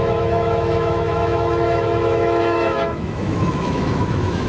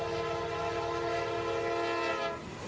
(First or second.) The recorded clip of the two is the second